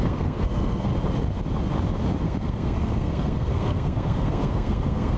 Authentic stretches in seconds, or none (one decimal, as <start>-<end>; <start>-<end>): 0.9-2.2